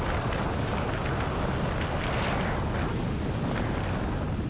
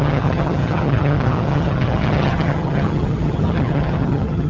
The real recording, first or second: first